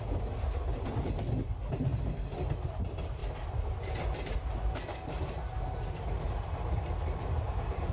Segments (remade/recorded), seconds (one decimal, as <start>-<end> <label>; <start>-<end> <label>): 0.0-7.9 recorded